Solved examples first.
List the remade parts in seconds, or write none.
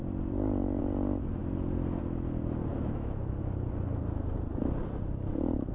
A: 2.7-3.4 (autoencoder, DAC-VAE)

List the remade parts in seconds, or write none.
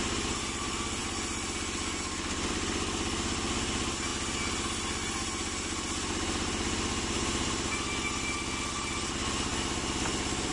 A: none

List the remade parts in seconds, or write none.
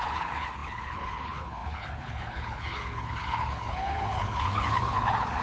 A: 0.0-5.4 (codec, HILCodec)